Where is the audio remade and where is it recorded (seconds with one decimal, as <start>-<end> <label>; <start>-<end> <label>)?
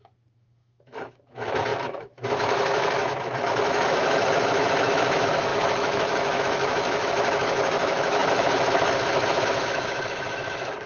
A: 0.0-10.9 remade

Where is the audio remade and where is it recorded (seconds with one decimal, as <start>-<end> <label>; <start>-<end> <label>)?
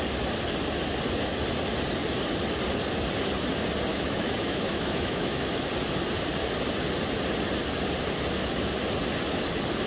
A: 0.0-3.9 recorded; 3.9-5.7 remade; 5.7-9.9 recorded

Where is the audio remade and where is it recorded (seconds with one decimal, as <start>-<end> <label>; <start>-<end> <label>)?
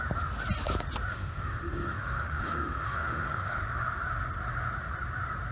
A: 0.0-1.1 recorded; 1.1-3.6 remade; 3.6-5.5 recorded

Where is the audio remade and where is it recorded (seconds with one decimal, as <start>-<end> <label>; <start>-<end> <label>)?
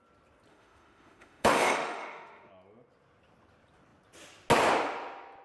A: 0.0-0.5 recorded; 0.5-2.5 remade; 2.5-5.4 recorded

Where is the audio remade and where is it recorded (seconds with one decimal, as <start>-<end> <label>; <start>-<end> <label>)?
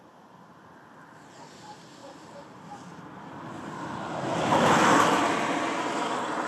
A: 0.0-4.5 recorded; 4.5-5.2 remade; 5.2-6.5 recorded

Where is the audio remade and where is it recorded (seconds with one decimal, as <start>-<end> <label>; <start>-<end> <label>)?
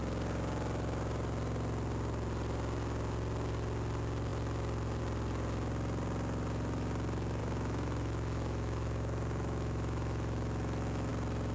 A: 0.0-7.4 recorded; 7.4-11.1 remade; 11.1-11.5 recorded